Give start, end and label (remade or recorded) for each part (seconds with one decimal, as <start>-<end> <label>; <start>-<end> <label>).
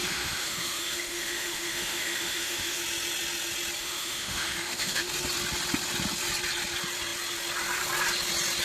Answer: 0.0-2.8 remade; 2.8-3.8 recorded; 3.8-5.1 remade; 5.1-8.6 recorded